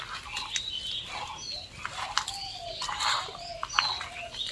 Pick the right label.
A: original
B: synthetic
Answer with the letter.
A